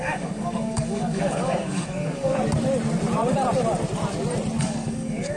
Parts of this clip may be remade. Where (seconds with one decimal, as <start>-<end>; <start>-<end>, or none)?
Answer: 0.0-2.3; 4.6-5.4